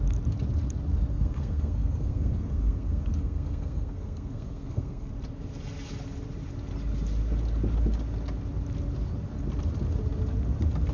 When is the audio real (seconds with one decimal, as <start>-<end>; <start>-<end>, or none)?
0.0-1.1; 5.1-10.9